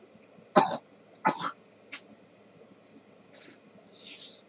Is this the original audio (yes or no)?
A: yes